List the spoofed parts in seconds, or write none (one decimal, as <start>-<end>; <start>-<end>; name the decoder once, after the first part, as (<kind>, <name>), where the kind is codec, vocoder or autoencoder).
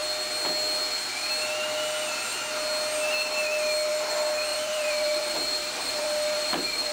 4.5-6.9 (vocoder, BigVGAN v2)